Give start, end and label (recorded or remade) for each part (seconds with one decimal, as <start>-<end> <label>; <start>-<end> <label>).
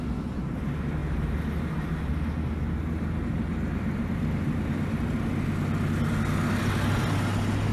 0.0-7.7 recorded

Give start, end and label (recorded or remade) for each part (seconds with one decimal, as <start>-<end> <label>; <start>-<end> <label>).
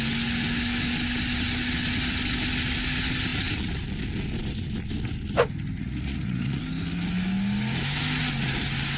0.0-5.8 recorded; 5.8-6.6 remade; 6.6-9.0 recorded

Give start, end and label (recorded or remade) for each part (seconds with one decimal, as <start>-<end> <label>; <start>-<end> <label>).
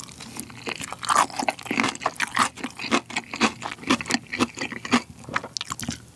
0.0-6.2 recorded